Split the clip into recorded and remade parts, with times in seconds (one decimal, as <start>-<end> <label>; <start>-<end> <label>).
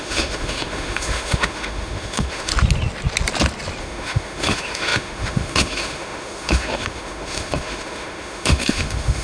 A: 0.0-2.5 remade; 2.5-3.8 recorded; 3.8-9.2 remade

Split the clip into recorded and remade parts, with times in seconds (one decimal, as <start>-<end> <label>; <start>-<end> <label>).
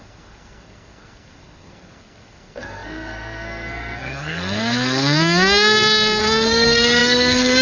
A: 0.0-7.6 remade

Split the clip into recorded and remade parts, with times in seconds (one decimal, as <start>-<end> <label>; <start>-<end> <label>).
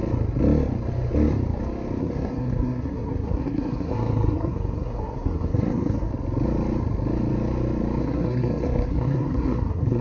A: 0.0-2.0 recorded; 2.0-6.1 remade; 6.1-8.0 recorded; 8.0-10.0 remade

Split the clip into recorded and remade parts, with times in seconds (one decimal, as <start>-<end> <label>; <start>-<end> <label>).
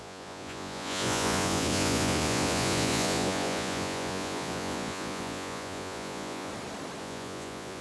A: 0.0-6.5 remade; 6.5-7.0 recorded; 7.0-7.8 remade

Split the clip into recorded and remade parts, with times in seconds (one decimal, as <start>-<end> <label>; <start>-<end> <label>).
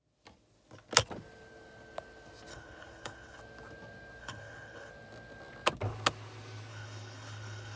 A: 0.0-2.5 recorded; 2.5-3.4 remade; 3.4-4.2 recorded; 4.2-4.9 remade; 4.9-6.7 recorded; 6.7-7.8 remade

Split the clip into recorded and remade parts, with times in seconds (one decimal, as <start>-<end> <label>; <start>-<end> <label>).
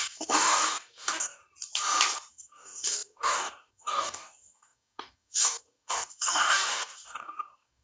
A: 0.0-1.4 remade; 1.4-2.3 recorded; 2.3-7.8 remade